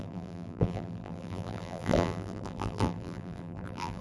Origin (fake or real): fake